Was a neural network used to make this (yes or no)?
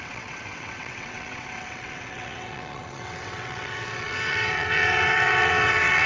yes